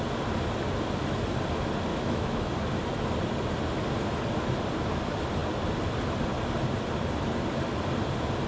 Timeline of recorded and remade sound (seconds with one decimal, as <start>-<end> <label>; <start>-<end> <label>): 0.0-1.9 recorded; 1.9-2.5 remade; 2.5-8.5 recorded